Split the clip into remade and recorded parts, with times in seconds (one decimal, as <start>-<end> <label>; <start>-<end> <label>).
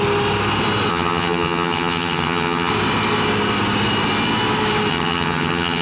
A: 0.0-0.9 recorded; 0.9-2.7 remade; 2.7-4.9 recorded; 4.9-5.8 remade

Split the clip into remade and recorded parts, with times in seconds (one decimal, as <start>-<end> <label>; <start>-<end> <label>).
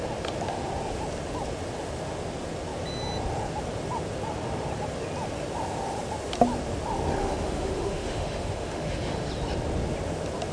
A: 0.0-7.2 recorded; 7.2-9.3 remade; 9.3-10.5 recorded